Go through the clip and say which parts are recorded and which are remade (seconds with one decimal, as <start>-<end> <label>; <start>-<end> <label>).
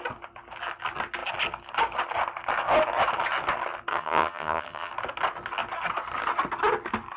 0.0-3.9 recorded; 3.9-4.9 remade; 4.9-7.2 recorded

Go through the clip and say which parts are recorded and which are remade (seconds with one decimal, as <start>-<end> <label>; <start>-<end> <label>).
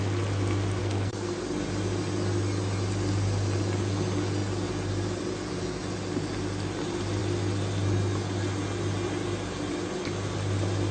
0.0-0.8 recorded; 0.8-1.4 remade; 1.4-10.9 recorded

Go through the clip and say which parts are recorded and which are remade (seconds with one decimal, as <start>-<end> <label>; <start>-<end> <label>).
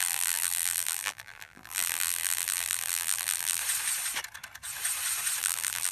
0.0-3.6 remade; 3.6-5.4 recorded; 5.4-5.9 remade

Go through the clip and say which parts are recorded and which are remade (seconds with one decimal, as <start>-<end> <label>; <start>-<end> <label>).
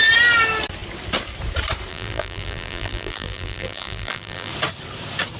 0.0-1.9 recorded; 1.9-4.5 remade; 4.5-5.4 recorded